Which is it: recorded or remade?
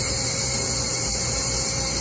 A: remade